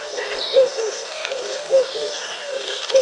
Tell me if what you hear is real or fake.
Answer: fake